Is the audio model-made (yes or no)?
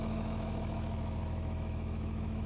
yes